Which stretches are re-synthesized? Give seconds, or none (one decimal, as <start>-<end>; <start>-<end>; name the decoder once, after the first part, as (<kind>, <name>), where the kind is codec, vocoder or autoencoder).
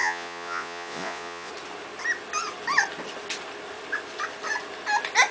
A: 0.0-1.5 (vocoder, Vocos)